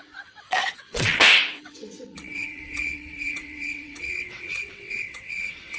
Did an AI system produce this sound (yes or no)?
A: yes